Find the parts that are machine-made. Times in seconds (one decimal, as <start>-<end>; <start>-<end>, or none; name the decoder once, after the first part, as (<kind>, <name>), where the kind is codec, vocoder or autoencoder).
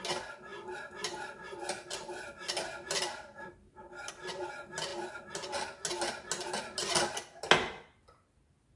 none